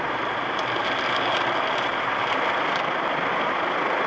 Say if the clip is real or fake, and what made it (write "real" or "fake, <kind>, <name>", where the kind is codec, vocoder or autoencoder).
real